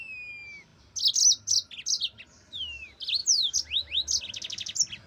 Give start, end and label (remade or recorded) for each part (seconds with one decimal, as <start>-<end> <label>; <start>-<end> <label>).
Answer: 0.0-5.1 recorded

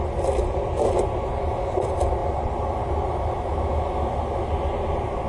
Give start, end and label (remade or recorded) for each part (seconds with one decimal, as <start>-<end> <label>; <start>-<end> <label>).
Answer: 0.0-5.3 recorded

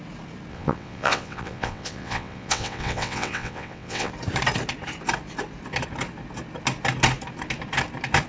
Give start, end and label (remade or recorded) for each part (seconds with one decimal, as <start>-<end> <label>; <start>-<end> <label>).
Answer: 0.0-0.5 recorded; 0.5-4.1 remade; 4.1-8.3 recorded

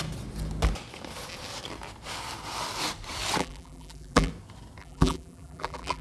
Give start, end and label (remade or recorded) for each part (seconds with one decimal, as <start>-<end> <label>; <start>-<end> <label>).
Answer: 0.0-3.4 recorded; 3.4-4.3 remade; 4.3-4.8 recorded; 4.8-6.0 remade

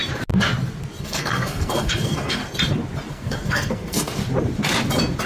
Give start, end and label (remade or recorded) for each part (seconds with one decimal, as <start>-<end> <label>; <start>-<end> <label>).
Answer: 0.0-1.0 recorded; 1.0-2.4 remade; 2.4-3.1 recorded; 3.1-4.2 remade; 4.2-5.3 recorded

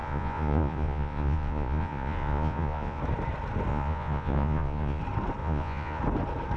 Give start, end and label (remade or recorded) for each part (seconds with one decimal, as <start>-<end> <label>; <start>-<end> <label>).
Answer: 0.0-3.0 remade; 3.0-3.7 recorded; 3.7-5.0 remade; 5.0-5.4 recorded; 5.4-6.0 remade; 6.0-6.6 recorded

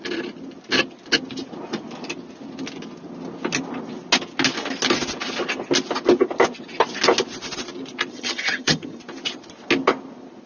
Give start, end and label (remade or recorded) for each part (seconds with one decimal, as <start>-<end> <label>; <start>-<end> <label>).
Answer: 0.0-8.1 recorded; 8.1-9.0 remade; 9.0-10.5 recorded